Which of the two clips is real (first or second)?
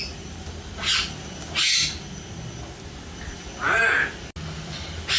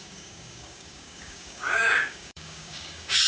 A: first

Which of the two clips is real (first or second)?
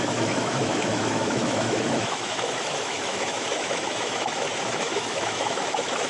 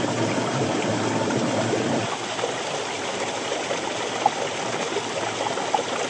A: second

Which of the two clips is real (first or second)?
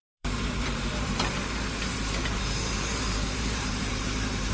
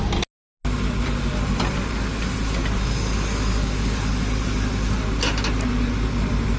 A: second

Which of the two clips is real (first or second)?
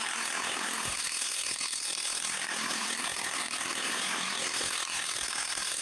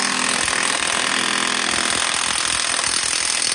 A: second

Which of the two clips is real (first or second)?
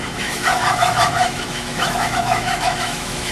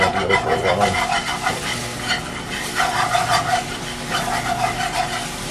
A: second